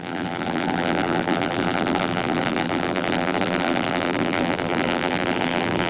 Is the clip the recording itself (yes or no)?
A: no